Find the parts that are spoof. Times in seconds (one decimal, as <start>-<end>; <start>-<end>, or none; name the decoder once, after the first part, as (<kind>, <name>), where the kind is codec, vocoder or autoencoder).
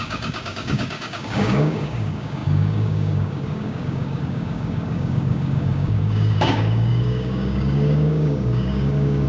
0.0-9.3 (codec, DAC)